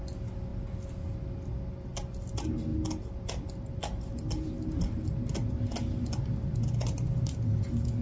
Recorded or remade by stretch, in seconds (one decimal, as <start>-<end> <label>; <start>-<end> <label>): 0.0-8.0 recorded